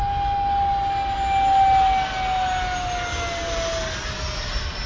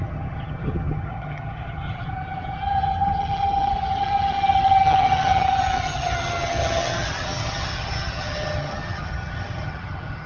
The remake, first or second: second